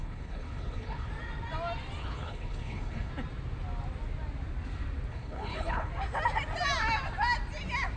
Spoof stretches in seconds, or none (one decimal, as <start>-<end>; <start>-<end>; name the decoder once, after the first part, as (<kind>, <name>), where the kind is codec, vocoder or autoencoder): 0.0-1.1 (codec, HILCodec); 2.0-3.1; 5.1-5.9